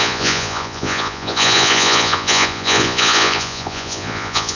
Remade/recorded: remade